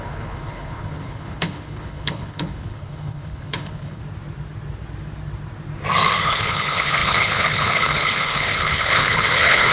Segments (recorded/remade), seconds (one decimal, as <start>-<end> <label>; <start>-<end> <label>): 0.0-4.0 remade; 4.0-6.2 recorded; 6.2-9.7 remade